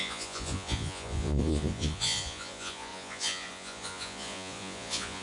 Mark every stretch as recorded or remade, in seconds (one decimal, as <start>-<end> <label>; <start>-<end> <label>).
0.0-5.2 remade